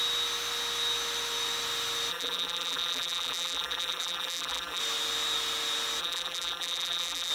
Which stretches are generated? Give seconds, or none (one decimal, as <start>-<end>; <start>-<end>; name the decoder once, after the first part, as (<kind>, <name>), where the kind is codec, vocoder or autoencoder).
2.1-4.8 (vocoder, BigVGAN v2); 6.0-7.3

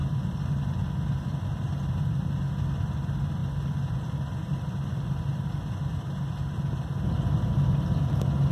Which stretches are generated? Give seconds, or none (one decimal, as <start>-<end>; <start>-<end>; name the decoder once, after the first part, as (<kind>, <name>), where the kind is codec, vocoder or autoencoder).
none

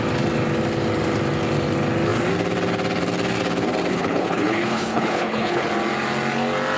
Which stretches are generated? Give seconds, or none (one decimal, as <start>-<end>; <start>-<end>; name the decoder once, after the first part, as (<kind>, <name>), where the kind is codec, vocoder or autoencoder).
3.9-5.7 (codec, HILCodec)

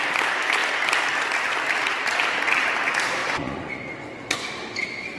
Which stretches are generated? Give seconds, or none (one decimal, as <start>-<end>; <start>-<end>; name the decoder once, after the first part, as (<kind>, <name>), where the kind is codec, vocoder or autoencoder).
3.2-4.5 (vocoder, Vocos)

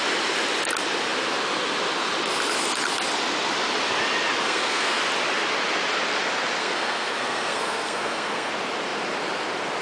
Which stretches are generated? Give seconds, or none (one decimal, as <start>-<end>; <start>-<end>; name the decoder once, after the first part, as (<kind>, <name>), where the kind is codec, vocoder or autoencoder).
4.4-5.0 (codec, SNAC); 6.6-8.5

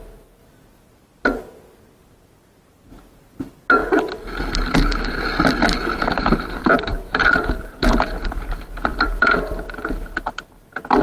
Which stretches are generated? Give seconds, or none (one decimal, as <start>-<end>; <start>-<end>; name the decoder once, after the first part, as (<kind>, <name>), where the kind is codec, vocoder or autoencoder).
6.9-7.7 (vocoder, BigVGAN v2); 8.9-10.2